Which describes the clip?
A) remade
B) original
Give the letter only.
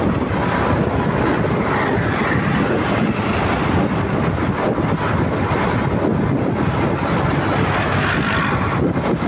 B